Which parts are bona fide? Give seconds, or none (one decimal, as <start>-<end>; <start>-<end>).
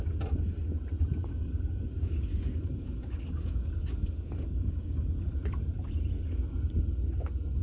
0.0-1.2; 5.3-7.6